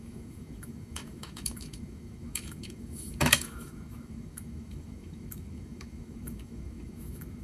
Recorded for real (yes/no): no